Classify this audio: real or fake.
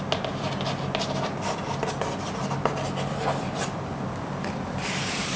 real